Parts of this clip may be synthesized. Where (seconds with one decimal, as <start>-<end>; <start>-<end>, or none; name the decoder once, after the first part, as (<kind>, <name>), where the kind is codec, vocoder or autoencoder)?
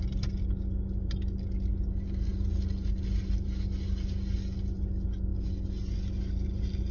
none